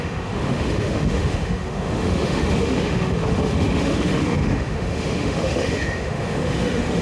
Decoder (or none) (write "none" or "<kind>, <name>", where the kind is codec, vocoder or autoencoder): autoencoder, DAC-VAE